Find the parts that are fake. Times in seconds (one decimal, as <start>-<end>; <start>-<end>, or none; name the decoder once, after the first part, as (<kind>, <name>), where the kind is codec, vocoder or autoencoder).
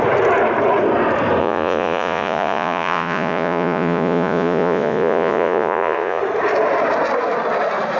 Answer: 1.4-6.2 (vocoder, Vocos)